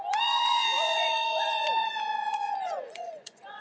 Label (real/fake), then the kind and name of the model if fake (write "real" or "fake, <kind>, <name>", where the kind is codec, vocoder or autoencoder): fake, vocoder, Vocos